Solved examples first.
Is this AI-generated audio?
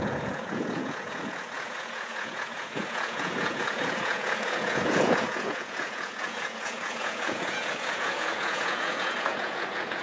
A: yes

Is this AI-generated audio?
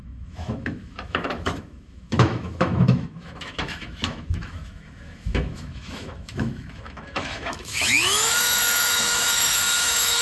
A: yes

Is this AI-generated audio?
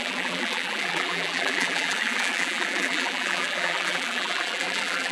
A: yes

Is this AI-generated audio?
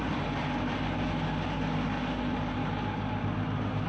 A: no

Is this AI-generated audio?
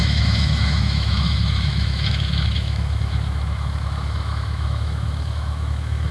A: yes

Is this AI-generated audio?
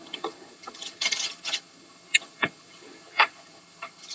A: yes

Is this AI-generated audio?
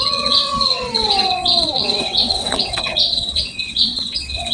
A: yes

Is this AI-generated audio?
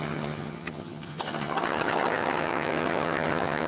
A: yes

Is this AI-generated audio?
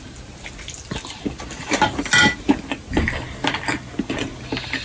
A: no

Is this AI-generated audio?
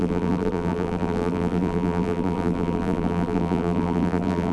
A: yes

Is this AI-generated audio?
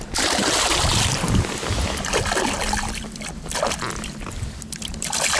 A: no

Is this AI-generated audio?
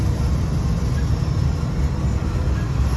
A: no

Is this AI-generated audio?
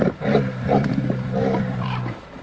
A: yes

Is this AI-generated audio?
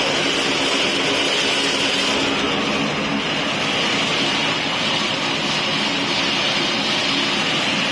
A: no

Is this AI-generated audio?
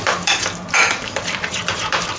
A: yes